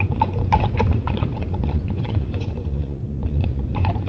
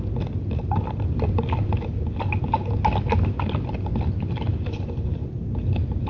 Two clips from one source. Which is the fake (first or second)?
first